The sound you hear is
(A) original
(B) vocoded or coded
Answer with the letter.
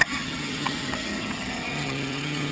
B